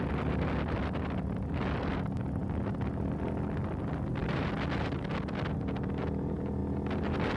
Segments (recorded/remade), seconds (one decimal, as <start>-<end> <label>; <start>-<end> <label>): 0.0-7.4 recorded